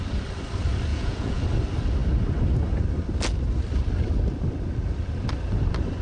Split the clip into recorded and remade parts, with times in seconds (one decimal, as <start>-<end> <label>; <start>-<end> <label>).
0.0-0.9 recorded; 0.9-1.4 remade; 1.4-6.0 recorded